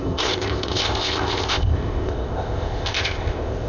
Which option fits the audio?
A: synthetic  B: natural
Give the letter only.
A